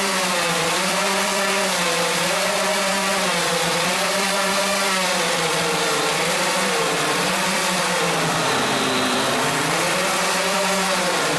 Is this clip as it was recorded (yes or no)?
no